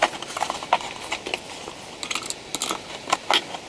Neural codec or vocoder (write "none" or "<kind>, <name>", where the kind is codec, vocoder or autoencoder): none